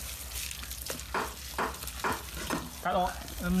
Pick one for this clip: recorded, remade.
recorded